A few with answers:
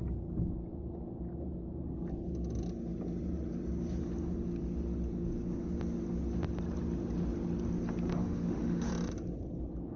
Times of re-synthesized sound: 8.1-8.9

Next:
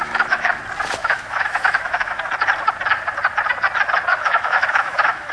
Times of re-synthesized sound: 0.0-0.6; 1.0-2.2; 4.1-5.3